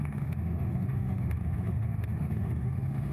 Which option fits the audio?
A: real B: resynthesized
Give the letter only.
B